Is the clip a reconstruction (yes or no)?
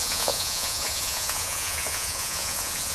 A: yes